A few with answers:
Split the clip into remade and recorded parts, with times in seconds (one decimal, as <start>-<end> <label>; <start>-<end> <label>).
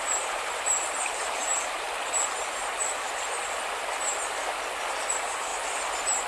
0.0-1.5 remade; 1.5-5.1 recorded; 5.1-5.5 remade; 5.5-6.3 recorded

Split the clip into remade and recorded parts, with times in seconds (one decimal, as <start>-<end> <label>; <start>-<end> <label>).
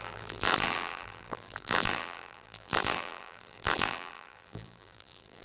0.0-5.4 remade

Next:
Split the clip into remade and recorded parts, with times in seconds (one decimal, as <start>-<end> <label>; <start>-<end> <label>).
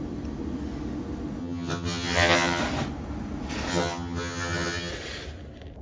0.0-1.4 recorded; 1.4-2.6 remade; 2.6-3.7 recorded; 3.7-4.9 remade; 4.9-5.8 recorded